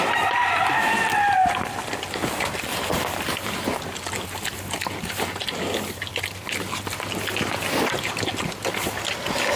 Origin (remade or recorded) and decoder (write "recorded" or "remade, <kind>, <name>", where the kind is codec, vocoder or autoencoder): recorded